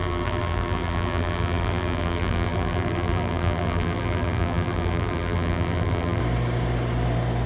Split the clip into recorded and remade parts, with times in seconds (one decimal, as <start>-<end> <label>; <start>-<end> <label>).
0.0-6.2 remade; 6.2-7.5 recorded